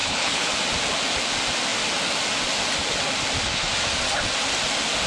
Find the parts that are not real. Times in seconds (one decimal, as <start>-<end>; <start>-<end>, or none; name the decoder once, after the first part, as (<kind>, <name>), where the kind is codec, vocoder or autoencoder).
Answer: 0.0-0.5 (codec, HILCodec)